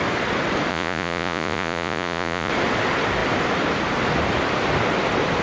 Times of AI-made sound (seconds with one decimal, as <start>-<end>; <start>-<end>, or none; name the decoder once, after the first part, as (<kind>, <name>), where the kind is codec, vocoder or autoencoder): 0.7-2.5 (vocoder, Vocos)